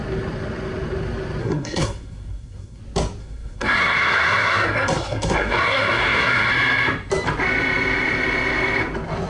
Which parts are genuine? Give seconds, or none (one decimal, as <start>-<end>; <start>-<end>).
0.0-1.4; 2.8-3.2; 6.5-9.3